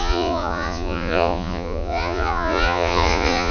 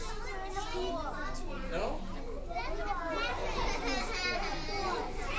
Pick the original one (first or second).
second